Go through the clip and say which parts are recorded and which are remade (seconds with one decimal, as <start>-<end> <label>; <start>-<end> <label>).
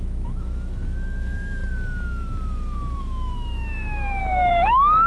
0.0-1.6 remade; 1.6-3.0 recorded; 3.0-5.1 remade